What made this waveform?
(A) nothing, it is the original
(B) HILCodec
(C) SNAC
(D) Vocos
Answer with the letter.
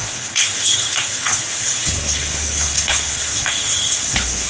B